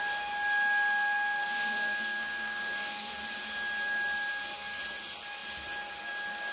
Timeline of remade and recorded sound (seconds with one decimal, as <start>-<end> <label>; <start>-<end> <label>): 0.0-1.4 recorded; 1.4-3.1 remade; 3.1-4.3 recorded; 4.3-4.8 remade; 4.8-6.5 recorded